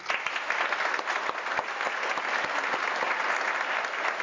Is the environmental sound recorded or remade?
recorded